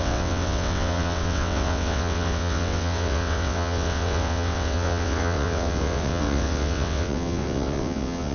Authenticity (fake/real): fake